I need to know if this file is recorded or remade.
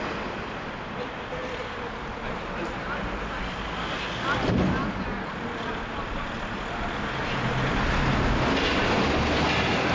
recorded